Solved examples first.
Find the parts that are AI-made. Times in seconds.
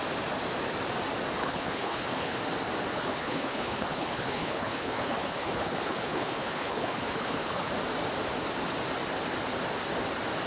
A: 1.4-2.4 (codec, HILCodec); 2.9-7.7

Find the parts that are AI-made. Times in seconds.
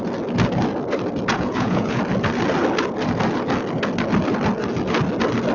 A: 1.3-2.0 (vocoder, Vocos)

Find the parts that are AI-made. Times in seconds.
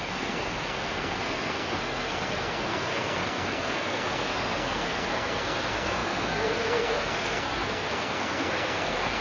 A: 0.0-9.2 (codec, SNAC)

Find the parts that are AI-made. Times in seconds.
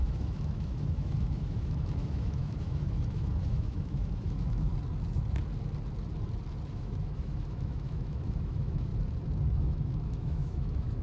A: 0.0-4.7 (autoencoder, DAC-VAE); 6.7-8.9; 9.5-11.0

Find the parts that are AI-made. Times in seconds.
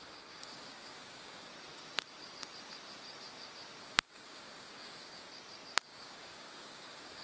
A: 0.0-1.5 (codec, DAC); 3.8-5.3; 5.8-7.2